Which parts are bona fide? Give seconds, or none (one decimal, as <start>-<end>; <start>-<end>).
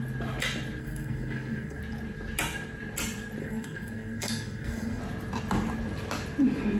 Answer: 0.0-0.8; 1.8-3.4; 5.0-6.8